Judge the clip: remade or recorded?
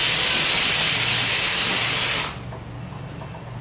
recorded